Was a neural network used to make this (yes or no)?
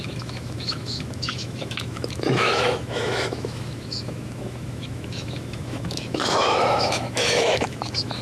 yes